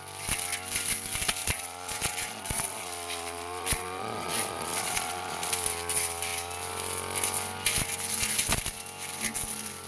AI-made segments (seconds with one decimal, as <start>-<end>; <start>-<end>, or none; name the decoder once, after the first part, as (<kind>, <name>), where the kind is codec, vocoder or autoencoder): 1.4-5.5 (vocoder, Vocos)